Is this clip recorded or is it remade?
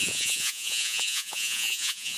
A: remade